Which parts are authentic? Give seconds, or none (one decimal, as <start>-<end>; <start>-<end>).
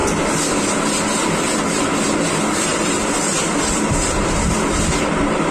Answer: 1.0-2.7; 4.4-5.5